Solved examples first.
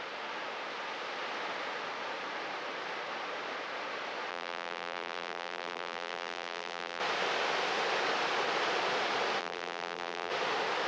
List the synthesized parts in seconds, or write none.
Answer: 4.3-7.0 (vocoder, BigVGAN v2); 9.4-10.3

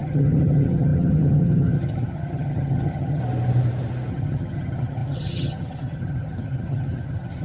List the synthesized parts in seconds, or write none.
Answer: 0.0-3.2 (vocoder, HiFi-GAN); 4.1-7.4

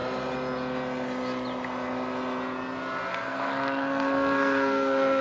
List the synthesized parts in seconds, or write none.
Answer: 3.1-5.2 (codec, SNAC)

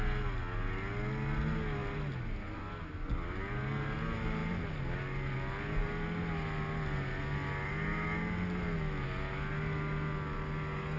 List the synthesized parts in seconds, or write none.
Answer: none

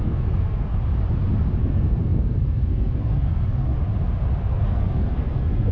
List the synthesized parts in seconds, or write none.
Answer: 0.0-0.7 (codec, SNAC); 1.6-3.8; 4.4-5.7

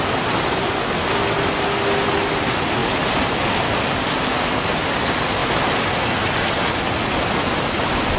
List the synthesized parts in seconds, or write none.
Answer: none

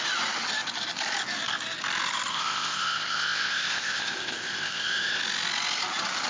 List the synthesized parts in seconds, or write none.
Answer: 2.3-5.2 (codec, ZipCodec)

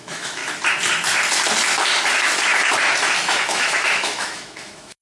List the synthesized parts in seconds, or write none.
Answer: 0.0-0.4 (autoencoder, DAC-VAE); 2.1-2.5; 3.2-5.0